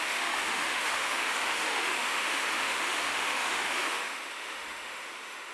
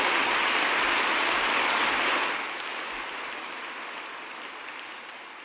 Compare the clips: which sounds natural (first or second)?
second